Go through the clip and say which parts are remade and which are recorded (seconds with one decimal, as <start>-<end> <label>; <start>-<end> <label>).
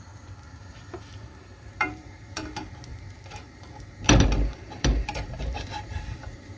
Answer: 0.0-0.5 recorded; 0.5-2.5 remade; 2.5-2.9 recorded; 2.9-6.6 remade